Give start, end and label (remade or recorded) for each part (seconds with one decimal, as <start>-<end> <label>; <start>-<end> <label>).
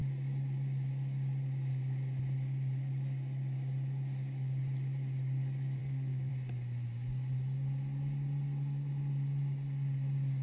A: 0.0-5.8 recorded; 5.8-6.3 remade; 6.3-10.4 recorded